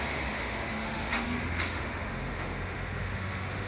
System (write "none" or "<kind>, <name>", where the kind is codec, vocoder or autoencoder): autoencoder, DAC-VAE